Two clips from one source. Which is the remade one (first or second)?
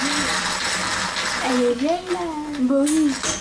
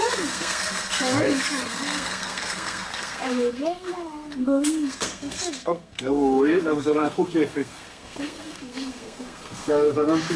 second